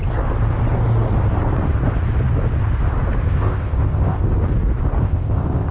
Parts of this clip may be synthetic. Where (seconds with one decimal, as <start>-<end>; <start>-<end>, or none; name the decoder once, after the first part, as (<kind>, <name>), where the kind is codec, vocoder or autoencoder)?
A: 3.2-4.2 (codec, ZipCodec); 5.0-5.7